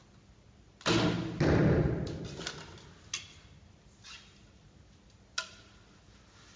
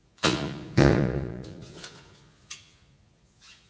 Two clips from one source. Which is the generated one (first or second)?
second